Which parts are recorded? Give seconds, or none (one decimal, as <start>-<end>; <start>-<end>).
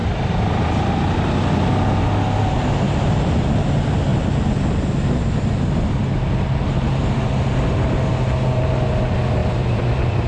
1.7-9.4